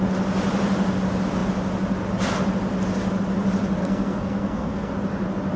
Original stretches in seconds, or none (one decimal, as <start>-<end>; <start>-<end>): 0.0-3.8; 4.9-5.6